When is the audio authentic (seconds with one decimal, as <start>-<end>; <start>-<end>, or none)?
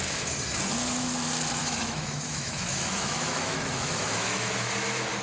0.0-1.6; 4.7-5.2